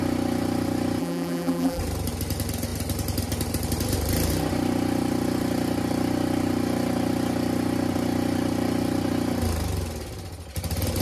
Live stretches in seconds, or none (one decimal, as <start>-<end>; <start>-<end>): 0.0-1.0; 1.8-11.0